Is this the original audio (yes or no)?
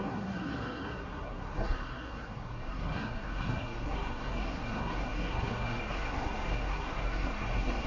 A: no